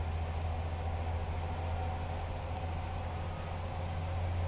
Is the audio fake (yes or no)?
no